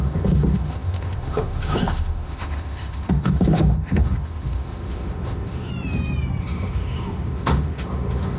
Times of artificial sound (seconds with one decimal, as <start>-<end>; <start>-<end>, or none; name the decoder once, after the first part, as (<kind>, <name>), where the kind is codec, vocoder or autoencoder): 0.0-5.7 (autoencoder, DAC-VAE); 6.4-8.4